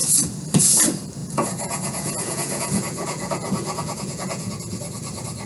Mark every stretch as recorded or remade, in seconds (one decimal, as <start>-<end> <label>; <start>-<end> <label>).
0.0-1.2 recorded; 1.2-4.5 remade; 4.5-5.5 recorded